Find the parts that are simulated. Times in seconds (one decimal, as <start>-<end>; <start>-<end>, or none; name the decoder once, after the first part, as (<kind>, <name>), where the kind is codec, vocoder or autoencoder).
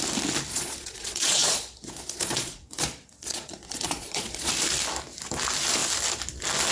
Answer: 0.5-4.5 (vocoder, Vocos)